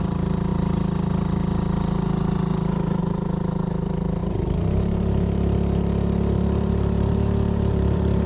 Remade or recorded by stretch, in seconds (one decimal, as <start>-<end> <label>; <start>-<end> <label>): 0.0-0.5 remade; 0.5-3.0 recorded; 3.0-8.3 remade